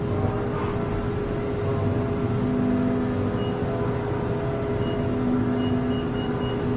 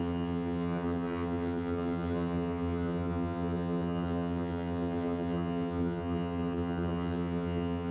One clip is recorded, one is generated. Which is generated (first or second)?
second